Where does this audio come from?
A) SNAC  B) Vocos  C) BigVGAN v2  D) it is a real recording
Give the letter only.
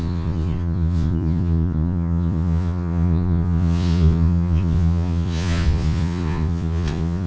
B